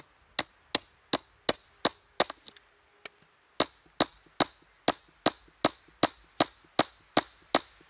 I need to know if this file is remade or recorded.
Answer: recorded